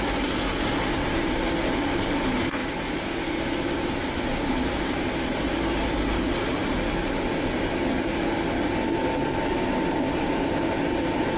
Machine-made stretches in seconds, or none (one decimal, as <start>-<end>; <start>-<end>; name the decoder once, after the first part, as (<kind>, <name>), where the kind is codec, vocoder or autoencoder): none

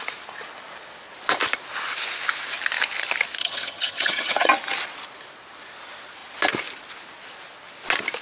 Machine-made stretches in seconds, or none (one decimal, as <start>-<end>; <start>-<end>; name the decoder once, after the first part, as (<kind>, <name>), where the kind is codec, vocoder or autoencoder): 3.4-4.5 (vocoder, HiFi-GAN)

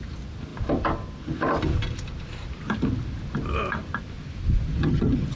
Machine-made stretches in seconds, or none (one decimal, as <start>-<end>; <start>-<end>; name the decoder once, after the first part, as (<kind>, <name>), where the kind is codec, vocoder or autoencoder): 4.8-5.4 (vocoder, HiFi-GAN)